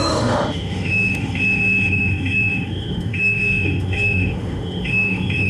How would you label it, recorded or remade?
remade